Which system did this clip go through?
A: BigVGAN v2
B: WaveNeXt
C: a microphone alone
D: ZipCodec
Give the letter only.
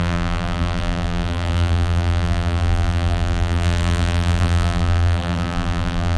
A